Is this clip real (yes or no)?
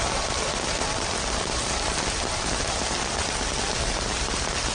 yes